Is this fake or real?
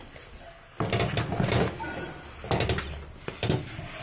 real